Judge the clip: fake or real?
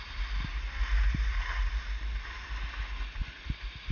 real